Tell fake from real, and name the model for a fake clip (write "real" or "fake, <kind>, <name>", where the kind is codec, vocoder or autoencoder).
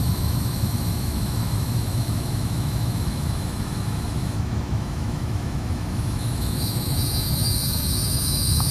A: fake, autoencoder, DAC-VAE